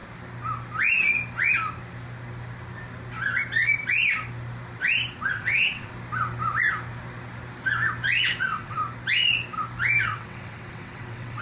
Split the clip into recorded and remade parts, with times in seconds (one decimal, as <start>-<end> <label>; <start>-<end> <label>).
0.0-5.3 recorded; 5.3-5.9 remade; 5.9-8.4 recorded; 8.4-8.8 remade; 8.8-10.0 recorded; 10.0-11.4 remade